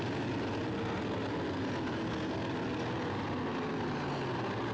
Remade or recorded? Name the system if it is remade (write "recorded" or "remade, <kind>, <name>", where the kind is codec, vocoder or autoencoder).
recorded